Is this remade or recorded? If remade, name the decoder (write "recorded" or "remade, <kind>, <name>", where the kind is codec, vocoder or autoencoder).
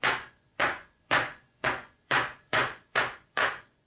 remade, vocoder, Vocos